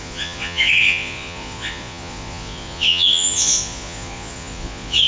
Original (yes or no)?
no